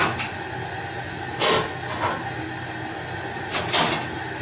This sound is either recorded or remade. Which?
recorded